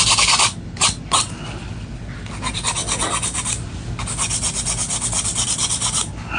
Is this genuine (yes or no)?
yes